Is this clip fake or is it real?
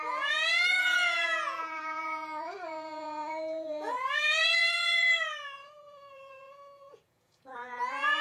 fake